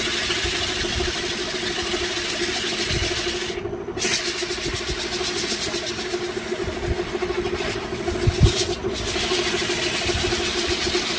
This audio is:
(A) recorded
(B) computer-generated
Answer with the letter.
A